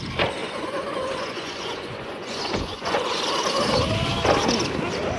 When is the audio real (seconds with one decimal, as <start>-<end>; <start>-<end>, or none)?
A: 0.0-0.4; 3.2-5.2